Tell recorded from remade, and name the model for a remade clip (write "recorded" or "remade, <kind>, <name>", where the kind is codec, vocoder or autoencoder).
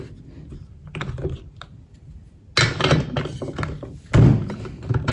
recorded